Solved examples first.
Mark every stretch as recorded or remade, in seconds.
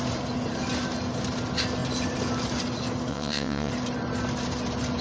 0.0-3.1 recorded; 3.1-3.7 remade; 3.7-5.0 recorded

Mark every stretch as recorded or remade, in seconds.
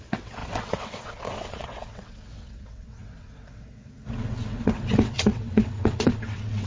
0.0-6.7 remade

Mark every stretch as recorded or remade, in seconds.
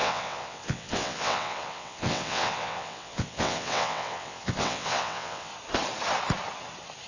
0.0-5.5 remade; 5.5-7.1 recorded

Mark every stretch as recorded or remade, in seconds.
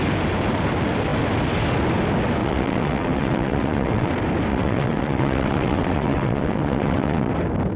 0.0-2.4 recorded; 2.4-4.1 remade; 4.1-4.5 recorded; 4.5-7.3 remade; 7.3-7.8 recorded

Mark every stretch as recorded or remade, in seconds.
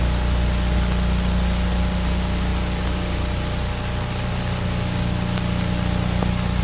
0.0-6.6 recorded